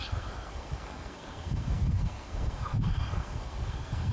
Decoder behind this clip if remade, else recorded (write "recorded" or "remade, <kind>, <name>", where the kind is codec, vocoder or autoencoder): remade, codec, SNAC